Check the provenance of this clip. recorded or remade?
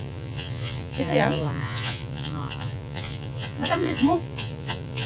remade